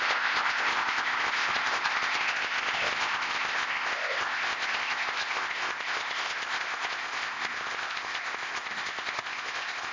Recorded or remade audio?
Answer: remade